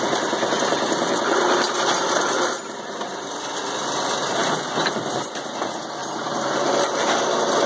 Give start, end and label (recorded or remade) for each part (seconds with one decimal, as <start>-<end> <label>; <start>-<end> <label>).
0.0-6.0 recorded; 6.0-6.7 remade; 6.7-7.7 recorded